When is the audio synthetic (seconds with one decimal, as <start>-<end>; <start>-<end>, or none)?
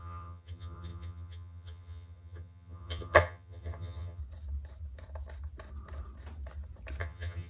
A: 0.0-4.2; 7.0-7.5